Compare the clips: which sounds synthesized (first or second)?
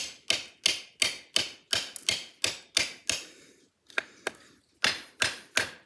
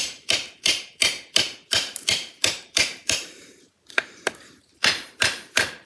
second